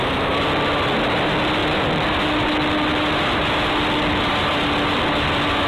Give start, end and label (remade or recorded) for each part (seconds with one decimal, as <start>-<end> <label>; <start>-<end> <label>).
0.0-5.7 recorded